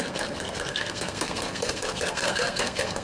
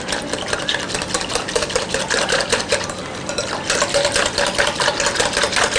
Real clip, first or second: second